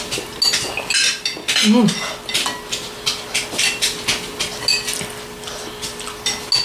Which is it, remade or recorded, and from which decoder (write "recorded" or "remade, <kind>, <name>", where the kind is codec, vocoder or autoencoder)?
recorded